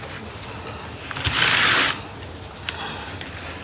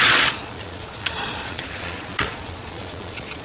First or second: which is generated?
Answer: second